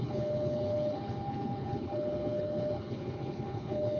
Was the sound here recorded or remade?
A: remade